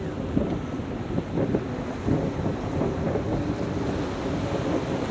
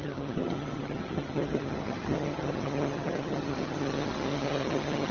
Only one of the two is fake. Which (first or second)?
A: second